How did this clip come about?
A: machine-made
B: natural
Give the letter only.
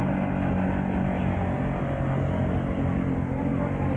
B